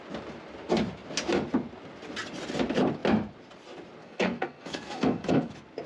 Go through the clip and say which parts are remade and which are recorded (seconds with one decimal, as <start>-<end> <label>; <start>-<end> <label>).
0.0-4.0 recorded; 4.0-5.5 remade; 5.5-5.9 recorded